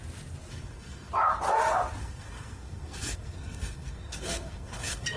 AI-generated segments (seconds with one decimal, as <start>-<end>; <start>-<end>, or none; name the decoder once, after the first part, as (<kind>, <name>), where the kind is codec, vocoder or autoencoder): 0.5-1.1 (codec, SNAC); 2.0-5.2